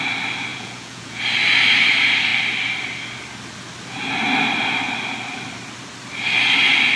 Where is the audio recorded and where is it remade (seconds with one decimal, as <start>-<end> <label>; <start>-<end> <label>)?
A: 0.0-0.5 recorded; 0.5-1.2 remade; 1.2-7.0 recorded